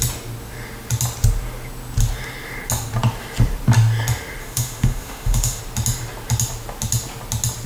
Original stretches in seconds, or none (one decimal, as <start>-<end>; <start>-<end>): 0.0-4.4; 5.6-7.7